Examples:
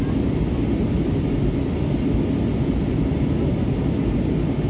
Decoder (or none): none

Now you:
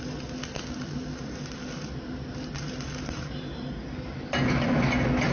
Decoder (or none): none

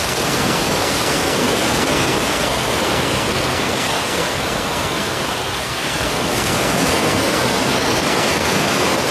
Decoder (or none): codec, SNAC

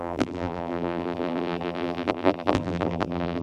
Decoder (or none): vocoder, BigVGAN v2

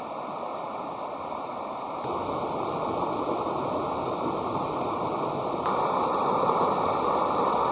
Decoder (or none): none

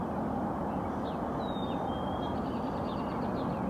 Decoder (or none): none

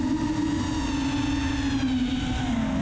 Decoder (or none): none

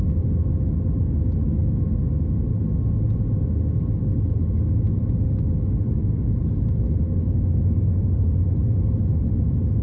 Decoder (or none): none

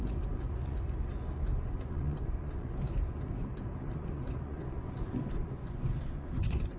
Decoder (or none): vocoder, Vocos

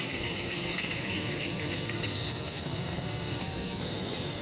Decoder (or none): codec, SNAC